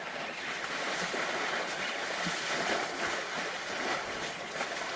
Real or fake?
real